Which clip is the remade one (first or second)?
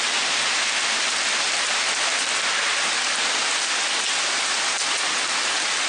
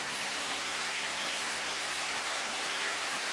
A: second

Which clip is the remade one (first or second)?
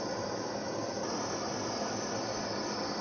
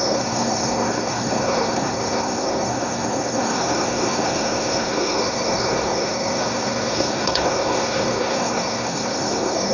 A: second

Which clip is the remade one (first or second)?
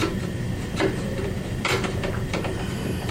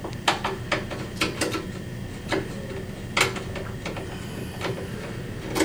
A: first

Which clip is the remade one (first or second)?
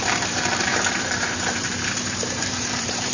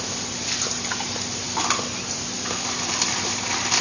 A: first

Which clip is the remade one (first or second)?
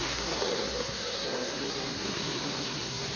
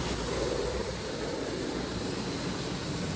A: first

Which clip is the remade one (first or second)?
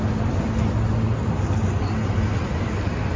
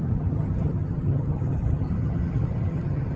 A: second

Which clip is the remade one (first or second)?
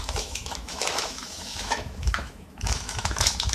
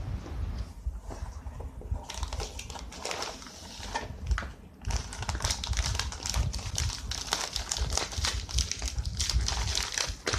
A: first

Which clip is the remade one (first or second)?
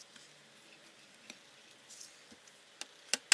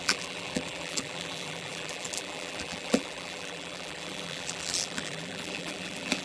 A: second